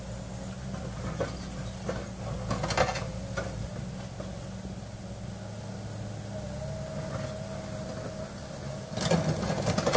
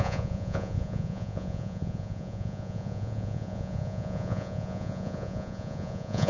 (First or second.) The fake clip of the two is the second